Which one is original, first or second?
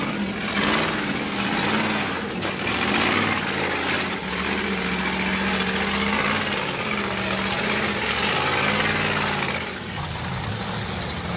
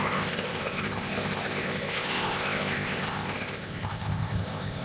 first